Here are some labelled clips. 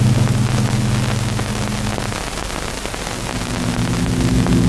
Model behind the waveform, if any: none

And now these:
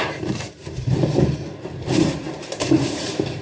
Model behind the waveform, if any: vocoder, BigVGAN v2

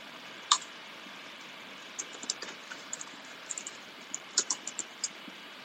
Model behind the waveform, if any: vocoder, BigVGAN v2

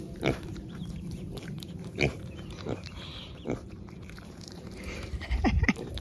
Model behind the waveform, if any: vocoder, BigVGAN v2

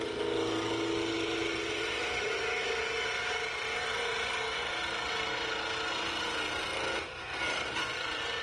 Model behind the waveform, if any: none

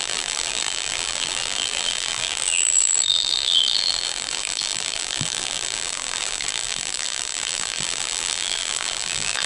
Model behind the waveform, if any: vocoder, BigVGAN v2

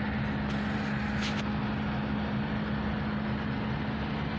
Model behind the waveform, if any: none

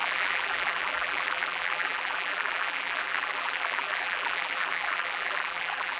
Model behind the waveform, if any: vocoder, BigVGAN v2